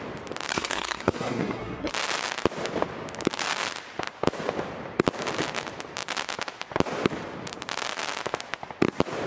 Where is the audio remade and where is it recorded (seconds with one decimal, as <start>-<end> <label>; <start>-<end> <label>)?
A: 0.0-0.5 recorded; 0.5-1.9 remade; 1.9-9.3 recorded